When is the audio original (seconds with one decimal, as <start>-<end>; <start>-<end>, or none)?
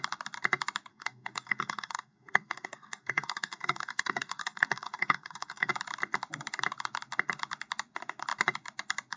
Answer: 0.0-0.9; 5.7-9.2